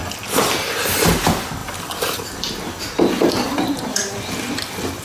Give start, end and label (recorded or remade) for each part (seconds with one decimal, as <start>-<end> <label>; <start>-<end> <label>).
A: 0.0-1.6 recorded; 1.6-4.6 remade; 4.6-5.0 recorded